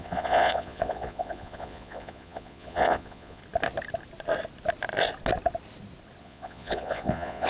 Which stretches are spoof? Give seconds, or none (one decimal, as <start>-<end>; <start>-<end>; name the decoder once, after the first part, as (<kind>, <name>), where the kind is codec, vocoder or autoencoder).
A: 0.0-3.4 (vocoder, Vocos); 6.2-7.5